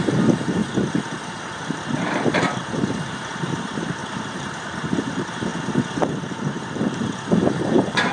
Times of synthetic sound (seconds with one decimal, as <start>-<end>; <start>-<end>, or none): 0.0-0.6; 1.4-5.5; 6.2-8.1